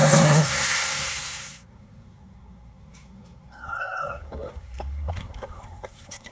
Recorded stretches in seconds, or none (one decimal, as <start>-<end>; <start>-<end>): none